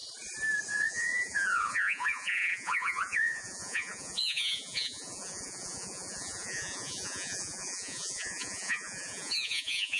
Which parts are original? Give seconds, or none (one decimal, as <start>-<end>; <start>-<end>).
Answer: 0.0-0.7